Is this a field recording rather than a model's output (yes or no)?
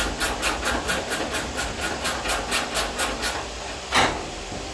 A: yes